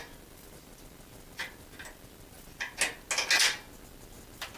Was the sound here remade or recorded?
recorded